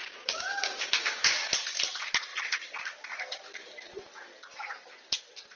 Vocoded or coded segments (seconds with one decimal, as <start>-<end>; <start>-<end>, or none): 0.0-1.5